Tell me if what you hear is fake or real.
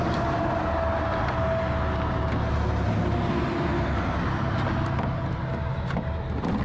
real